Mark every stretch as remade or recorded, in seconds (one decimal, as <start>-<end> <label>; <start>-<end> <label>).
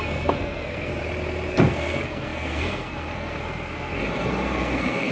0.0-0.9 remade; 0.9-1.5 recorded; 1.5-5.1 remade